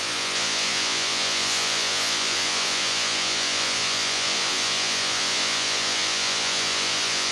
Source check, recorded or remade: remade